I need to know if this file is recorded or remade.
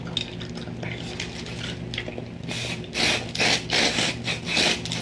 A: recorded